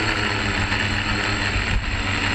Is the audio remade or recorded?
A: recorded